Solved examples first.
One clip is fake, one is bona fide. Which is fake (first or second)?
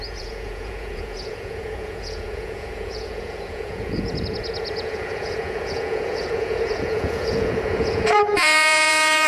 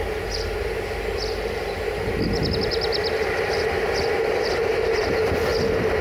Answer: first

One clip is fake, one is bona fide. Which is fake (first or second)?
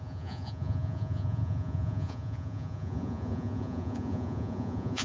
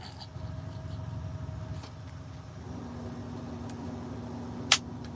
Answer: first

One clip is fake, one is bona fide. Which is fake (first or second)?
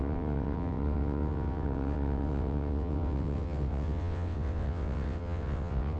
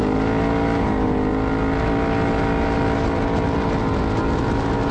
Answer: first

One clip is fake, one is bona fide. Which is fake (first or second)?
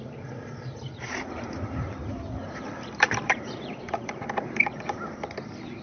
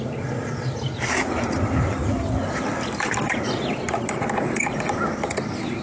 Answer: first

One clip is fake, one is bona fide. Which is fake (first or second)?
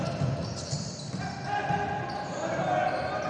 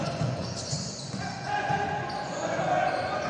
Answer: second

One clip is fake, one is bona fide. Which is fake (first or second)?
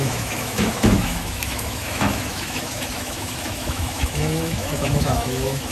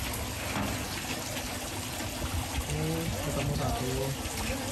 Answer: first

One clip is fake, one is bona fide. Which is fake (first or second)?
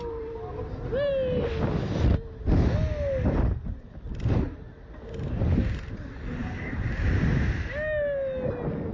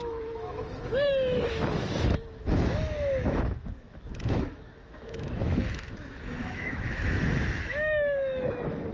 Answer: second